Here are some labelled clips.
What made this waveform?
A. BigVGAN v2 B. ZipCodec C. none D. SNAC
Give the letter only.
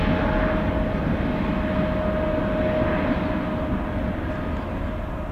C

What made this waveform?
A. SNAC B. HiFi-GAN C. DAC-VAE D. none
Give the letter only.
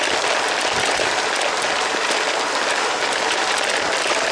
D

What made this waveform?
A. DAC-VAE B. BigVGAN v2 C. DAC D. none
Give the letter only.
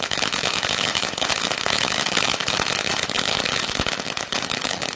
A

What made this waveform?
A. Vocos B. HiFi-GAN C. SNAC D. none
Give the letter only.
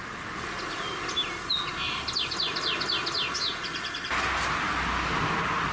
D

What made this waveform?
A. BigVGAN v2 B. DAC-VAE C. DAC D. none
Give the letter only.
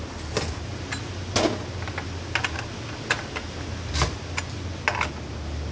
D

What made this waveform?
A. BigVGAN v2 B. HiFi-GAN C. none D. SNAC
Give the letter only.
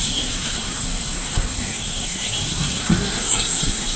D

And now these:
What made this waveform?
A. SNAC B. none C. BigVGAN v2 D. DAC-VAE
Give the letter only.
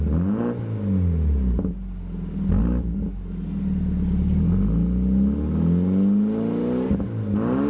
B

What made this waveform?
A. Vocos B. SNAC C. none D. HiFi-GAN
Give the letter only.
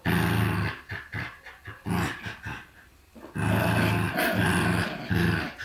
C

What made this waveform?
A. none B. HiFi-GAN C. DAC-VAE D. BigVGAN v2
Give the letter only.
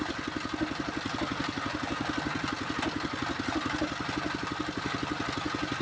A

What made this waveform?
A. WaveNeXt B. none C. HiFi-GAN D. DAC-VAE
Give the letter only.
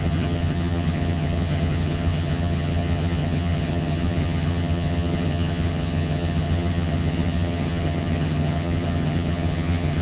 C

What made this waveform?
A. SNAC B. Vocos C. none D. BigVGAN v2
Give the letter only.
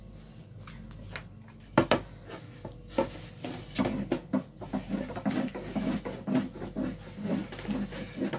C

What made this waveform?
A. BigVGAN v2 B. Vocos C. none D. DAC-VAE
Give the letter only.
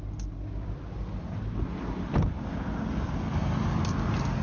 C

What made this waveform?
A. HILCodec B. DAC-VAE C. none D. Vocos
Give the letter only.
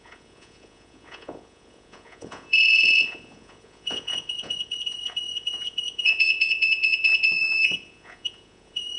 D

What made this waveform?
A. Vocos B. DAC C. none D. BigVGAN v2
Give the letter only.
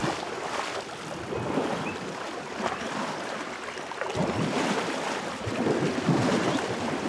C